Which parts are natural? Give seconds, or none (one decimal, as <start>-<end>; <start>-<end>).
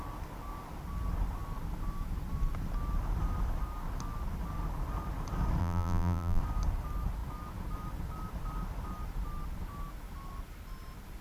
0.0-5.6; 6.4-11.2